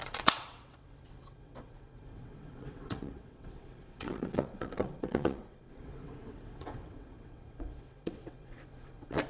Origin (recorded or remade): remade